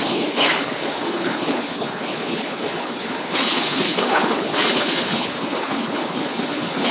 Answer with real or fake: fake